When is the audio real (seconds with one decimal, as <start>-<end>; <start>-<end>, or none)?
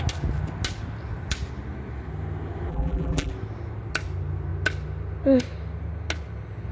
0.0-2.7; 3.3-6.7